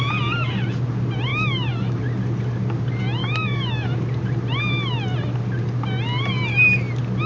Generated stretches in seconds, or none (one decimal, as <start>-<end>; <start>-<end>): 1.3-2.0; 3.2-3.9